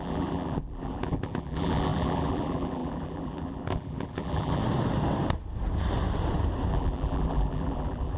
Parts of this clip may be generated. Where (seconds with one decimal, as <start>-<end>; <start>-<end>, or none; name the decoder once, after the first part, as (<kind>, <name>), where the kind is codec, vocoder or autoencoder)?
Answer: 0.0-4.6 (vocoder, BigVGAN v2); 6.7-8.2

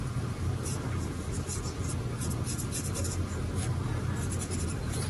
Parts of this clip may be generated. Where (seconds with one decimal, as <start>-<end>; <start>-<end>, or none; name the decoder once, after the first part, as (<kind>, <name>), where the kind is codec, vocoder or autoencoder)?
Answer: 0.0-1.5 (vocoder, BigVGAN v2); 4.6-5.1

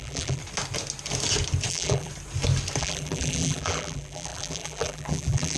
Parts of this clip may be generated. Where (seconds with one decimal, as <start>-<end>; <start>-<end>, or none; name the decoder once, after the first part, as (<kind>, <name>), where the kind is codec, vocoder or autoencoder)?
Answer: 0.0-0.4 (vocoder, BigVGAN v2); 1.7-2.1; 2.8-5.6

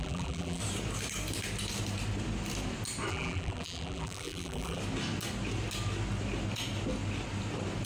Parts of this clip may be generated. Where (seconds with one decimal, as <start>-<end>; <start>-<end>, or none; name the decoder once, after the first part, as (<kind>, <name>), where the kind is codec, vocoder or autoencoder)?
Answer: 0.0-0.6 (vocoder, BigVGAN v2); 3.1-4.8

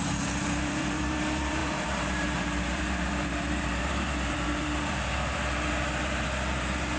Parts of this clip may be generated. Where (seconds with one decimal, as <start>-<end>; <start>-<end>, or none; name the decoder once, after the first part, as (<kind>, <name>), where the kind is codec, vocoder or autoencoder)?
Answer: 0.0-7.0 (vocoder, BigVGAN v2)